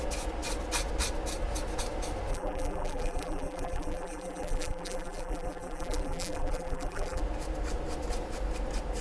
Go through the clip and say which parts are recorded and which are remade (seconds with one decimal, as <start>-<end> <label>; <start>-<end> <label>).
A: 0.0-2.3 recorded; 2.3-7.2 remade; 7.2-9.0 recorded